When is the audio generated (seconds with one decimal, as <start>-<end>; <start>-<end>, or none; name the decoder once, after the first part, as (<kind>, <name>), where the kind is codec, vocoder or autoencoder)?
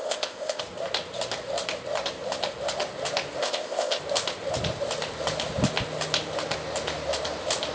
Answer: 0.0-0.6 (codec, ZipCodec); 3.4-4.0